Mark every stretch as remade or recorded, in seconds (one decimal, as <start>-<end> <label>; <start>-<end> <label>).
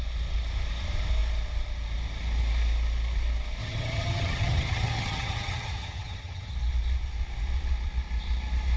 0.0-3.6 recorded; 3.6-6.5 remade; 6.5-8.8 recorded